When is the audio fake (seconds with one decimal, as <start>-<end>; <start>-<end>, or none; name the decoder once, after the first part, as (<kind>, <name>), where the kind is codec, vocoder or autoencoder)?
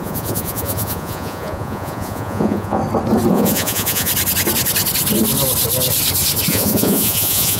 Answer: 0.0-2.8 (vocoder, Vocos); 3.3-4.1; 6.5-7.6